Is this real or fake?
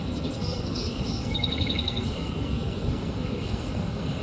fake